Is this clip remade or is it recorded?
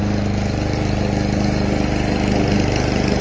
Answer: recorded